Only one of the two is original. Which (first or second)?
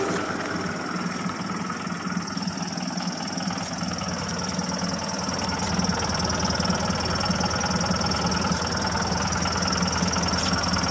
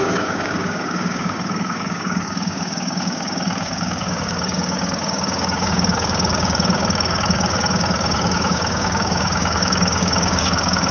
first